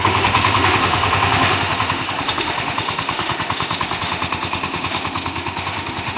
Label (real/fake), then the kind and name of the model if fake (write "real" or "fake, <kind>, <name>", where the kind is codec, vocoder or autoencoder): fake, autoencoder, DAC-VAE